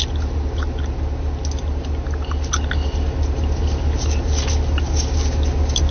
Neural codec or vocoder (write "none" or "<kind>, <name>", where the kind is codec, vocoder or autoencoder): none